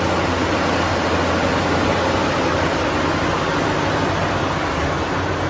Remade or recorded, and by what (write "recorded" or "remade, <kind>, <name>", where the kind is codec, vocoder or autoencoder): recorded